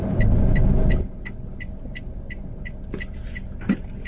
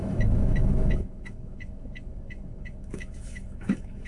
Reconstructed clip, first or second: second